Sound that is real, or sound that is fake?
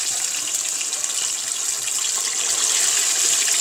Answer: real